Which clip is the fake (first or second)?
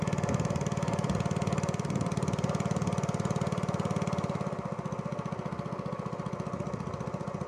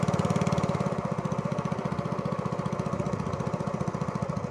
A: second